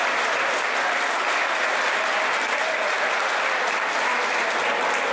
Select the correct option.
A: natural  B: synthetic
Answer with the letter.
A